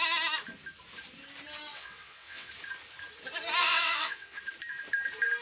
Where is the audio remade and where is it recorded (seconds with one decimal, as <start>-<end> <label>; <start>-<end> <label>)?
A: 0.0-1.7 recorded; 1.7-2.5 remade; 2.5-3.6 recorded; 3.6-4.4 remade; 4.4-5.4 recorded